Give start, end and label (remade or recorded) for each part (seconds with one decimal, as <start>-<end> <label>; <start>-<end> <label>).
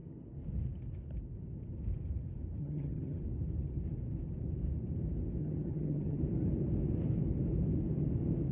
0.0-2.6 recorded; 2.6-3.2 remade; 3.2-5.4 recorded; 5.4-6.2 remade; 6.2-8.5 recorded